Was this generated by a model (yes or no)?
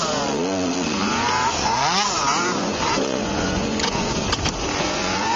yes